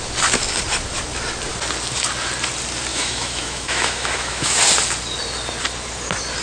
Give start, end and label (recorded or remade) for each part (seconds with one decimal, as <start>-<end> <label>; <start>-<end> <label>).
0.0-2.9 recorded; 2.9-4.6 remade; 4.6-6.4 recorded